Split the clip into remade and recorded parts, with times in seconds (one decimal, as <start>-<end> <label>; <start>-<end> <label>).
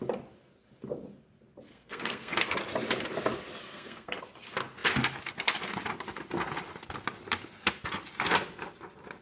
0.0-1.7 recorded; 1.7-2.5 remade; 2.5-3.6 recorded; 3.6-4.2 remade; 4.2-9.2 recorded